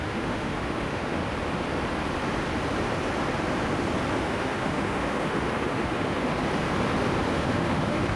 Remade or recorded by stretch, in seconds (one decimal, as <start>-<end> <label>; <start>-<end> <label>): 0.0-1.2 remade; 1.2-4.1 recorded; 4.1-6.3 remade; 6.3-7.3 recorded; 7.3-8.2 remade